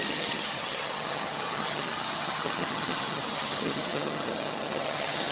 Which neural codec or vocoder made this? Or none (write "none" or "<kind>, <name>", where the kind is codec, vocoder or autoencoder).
vocoder, HiFi-GAN